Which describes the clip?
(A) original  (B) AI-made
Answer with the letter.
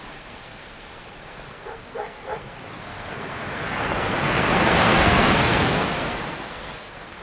B